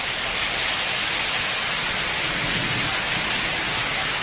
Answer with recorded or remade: recorded